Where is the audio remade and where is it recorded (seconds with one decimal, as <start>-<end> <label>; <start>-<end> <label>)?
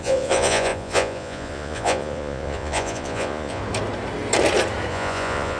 0.0-3.6 remade; 3.6-4.9 recorded; 4.9-5.6 remade